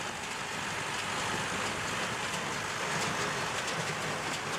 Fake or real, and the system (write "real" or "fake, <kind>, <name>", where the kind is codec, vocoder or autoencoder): real